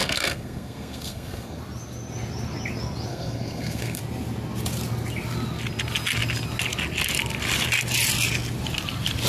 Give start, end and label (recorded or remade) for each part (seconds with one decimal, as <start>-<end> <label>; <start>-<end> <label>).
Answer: 0.0-1.6 remade; 1.6-3.1 recorded; 3.1-4.0 remade; 4.0-9.3 recorded